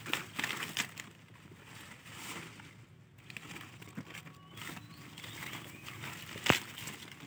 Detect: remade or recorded recorded